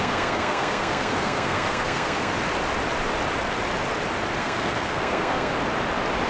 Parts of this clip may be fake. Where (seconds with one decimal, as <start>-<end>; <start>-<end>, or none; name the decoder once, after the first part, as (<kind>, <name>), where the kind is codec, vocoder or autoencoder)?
0.0-2.3 (codec, SNAC); 4.4-5.5